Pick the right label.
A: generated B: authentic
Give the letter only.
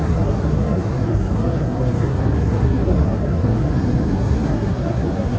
A